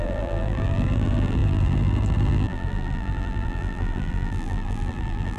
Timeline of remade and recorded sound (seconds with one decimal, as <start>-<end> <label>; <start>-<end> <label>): 0.0-5.4 remade